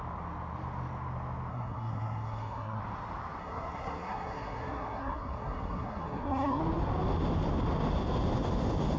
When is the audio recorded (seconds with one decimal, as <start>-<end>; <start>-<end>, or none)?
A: 0.0-1.5; 2.8-3.4; 6.6-9.0